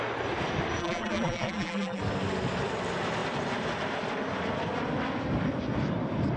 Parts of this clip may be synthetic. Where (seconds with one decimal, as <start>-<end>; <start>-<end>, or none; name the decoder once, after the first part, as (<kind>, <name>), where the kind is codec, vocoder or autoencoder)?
0.8-2.0 (vocoder, BigVGAN v2)